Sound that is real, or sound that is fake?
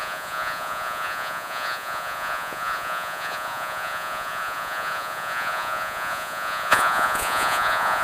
fake